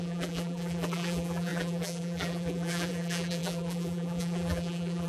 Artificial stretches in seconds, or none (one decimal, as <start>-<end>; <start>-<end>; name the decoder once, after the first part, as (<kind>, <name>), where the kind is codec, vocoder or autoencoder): 0.0-5.1 (vocoder, BigVGAN v2)